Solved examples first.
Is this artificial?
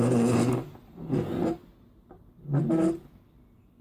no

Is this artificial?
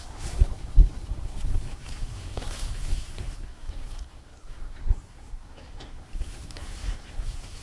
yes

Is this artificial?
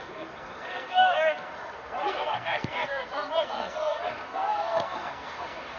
yes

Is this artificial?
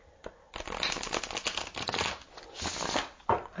no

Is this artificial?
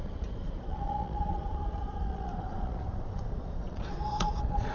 yes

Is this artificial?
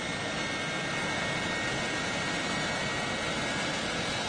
no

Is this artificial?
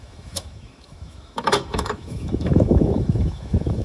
yes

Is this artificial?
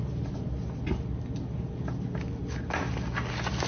no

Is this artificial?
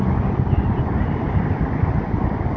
no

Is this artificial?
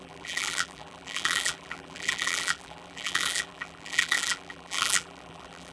yes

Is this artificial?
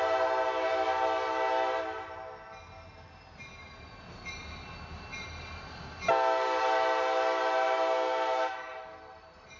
no